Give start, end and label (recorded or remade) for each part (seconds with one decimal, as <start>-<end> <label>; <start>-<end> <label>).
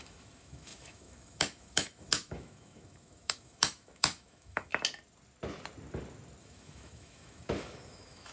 0.0-4.7 remade; 4.7-6.4 recorded; 6.4-8.3 remade